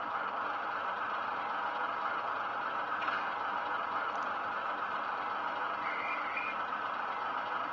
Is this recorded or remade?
recorded